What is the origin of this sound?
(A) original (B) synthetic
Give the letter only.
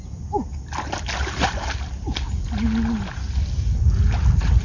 A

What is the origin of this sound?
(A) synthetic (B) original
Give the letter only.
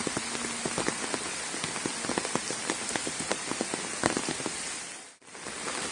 B